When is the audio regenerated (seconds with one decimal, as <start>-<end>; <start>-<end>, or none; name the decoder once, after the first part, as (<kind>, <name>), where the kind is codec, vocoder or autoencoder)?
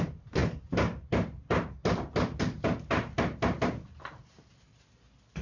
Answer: none